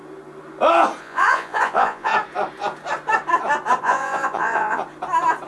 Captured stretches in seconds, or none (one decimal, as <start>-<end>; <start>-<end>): 0.0-1.0; 2.1-3.8; 4.8-5.5